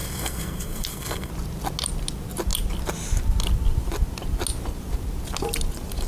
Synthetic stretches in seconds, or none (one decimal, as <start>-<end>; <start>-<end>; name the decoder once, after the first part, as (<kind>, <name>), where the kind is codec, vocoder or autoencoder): 0.0-1.3 (codec, SNAC)